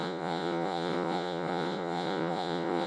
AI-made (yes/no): yes